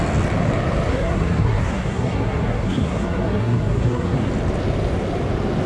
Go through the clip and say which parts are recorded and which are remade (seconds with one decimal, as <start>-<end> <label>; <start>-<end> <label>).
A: 0.0-0.9 recorded; 0.9-4.3 remade; 4.3-5.7 recorded